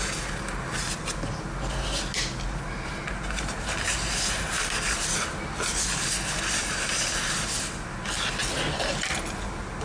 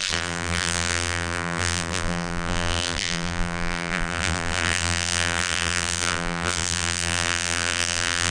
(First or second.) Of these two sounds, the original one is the first